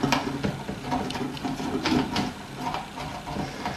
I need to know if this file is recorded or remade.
recorded